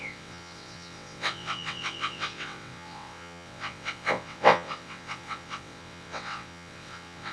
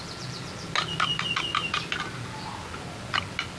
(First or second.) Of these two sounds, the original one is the second